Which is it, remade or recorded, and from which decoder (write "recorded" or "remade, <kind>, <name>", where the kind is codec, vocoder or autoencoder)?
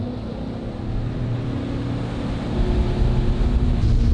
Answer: recorded